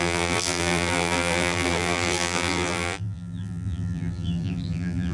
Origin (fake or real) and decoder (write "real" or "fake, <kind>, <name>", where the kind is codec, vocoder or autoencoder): fake, vocoder, BigVGAN v2